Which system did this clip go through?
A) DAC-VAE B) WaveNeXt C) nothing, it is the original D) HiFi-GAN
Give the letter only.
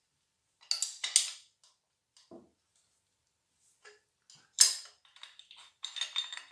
C